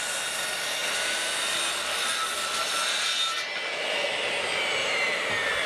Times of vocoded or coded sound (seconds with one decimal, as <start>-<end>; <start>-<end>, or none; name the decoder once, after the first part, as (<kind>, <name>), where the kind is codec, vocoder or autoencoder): 4.8-5.3 (vocoder, BigVGAN v2)